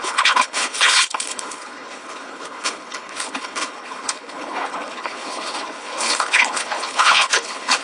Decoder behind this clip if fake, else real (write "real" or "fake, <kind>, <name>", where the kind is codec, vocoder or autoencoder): fake, codec, HILCodec